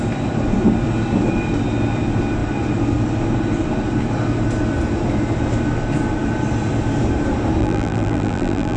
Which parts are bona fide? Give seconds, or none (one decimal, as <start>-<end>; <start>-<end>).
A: 0.0-7.6